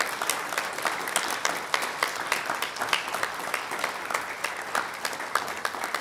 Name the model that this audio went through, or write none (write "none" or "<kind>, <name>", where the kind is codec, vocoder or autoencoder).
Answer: none